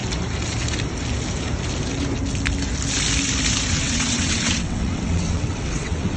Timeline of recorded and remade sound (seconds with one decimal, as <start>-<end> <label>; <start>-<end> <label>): 0.0-3.7 recorded; 3.7-6.2 remade